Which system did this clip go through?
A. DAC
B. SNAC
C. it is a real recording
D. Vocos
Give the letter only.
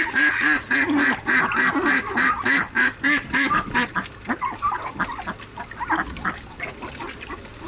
C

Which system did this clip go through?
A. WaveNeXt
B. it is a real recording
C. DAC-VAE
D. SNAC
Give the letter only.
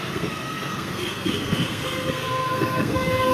D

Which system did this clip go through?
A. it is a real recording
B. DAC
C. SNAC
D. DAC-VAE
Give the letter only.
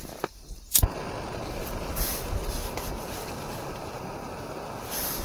A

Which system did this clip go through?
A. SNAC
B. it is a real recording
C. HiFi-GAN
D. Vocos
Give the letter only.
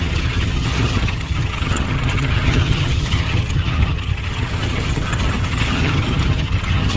C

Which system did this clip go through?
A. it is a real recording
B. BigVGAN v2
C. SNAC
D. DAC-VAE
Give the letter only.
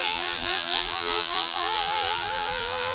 B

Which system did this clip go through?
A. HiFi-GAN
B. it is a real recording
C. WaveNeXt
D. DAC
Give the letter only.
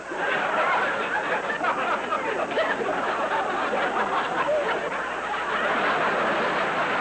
B